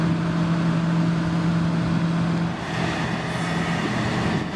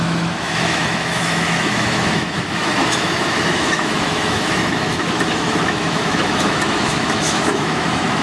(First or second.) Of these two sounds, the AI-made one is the second